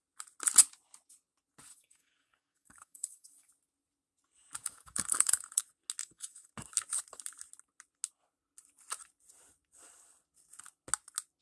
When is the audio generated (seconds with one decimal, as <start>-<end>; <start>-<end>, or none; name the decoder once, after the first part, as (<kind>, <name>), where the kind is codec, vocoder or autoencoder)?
1.7-3.5 (codec, DAC); 4.6-5.6; 6.0-6.5

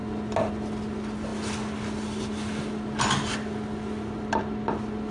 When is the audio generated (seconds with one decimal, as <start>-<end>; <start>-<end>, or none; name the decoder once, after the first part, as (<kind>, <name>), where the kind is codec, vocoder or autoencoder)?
none

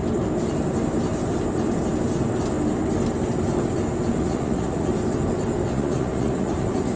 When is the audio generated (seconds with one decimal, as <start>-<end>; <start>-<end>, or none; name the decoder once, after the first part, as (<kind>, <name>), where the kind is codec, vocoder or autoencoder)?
4.2-4.9 (vocoder, Vocos); 5.7-7.0

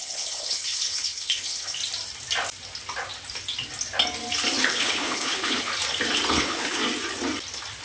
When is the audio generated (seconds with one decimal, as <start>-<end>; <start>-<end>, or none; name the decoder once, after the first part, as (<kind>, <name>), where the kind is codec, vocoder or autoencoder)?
0.0-1.8 (codec, HILCodec); 4.6-5.7; 6.3-6.8

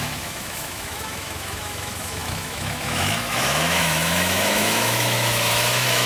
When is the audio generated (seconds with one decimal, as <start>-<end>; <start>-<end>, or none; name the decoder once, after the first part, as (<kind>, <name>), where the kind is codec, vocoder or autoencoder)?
0.0-6.1 (autoencoder, DAC-VAE)

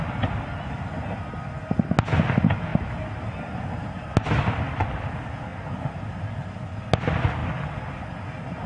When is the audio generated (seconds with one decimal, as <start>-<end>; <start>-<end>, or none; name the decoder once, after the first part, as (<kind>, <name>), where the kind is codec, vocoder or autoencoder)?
5.5-6.8 (vocoder, BigVGAN v2)

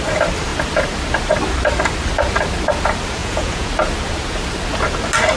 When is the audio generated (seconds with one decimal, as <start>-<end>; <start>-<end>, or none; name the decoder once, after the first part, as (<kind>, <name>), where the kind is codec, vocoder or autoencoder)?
3.2-3.7 (vocoder, Vocos)